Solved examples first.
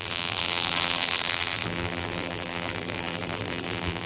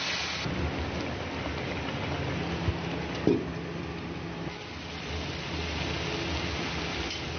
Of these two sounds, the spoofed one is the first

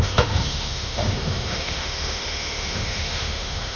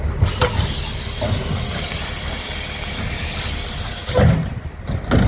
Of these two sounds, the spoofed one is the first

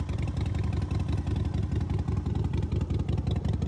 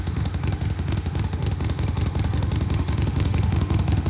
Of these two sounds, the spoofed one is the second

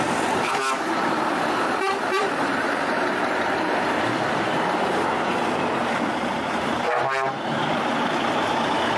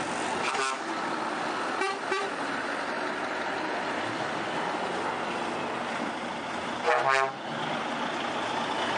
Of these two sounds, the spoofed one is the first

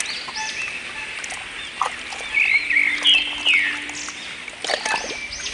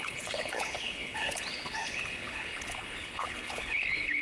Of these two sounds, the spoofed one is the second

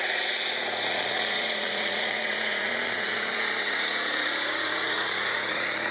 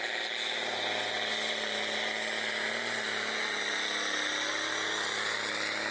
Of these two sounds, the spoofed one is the first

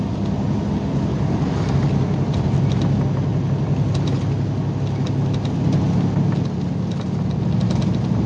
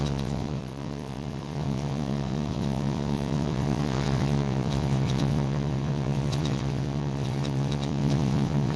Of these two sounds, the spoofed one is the second